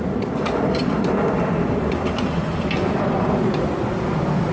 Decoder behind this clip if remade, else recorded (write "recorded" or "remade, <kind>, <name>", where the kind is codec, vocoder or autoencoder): recorded